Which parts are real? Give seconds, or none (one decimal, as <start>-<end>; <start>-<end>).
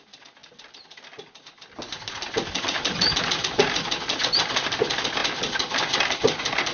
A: 0.0-6.7